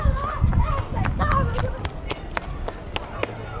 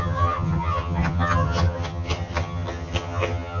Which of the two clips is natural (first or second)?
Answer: first